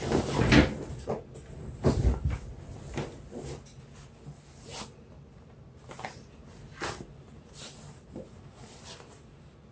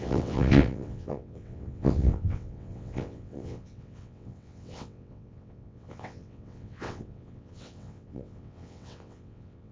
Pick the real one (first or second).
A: first